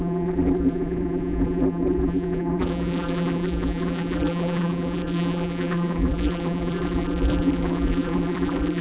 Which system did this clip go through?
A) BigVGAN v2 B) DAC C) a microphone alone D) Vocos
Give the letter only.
A